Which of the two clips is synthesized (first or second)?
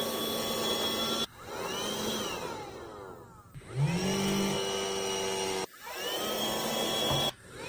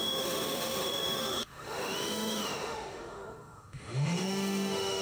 second